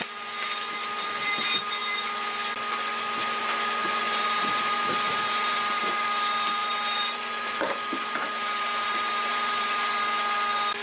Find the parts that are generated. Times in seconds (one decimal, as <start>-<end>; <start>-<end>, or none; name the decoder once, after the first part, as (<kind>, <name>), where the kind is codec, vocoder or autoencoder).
4.0-5.8 (vocoder, BigVGAN v2); 6.6-10.0